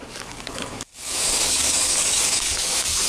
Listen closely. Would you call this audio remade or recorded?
remade